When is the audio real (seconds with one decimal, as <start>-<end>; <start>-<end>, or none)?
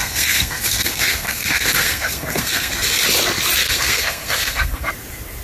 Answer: 2.7-3.6; 4.9-5.4